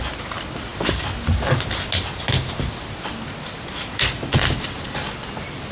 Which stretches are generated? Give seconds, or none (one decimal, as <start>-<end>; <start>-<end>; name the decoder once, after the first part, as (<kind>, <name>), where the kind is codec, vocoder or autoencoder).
none